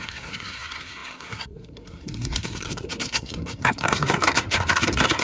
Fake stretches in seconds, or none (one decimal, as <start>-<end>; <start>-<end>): 0.0-5.2